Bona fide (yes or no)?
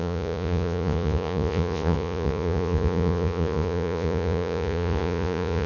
no